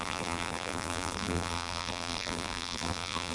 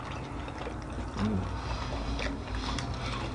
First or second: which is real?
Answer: second